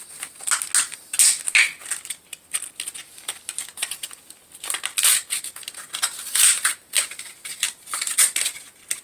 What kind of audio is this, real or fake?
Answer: real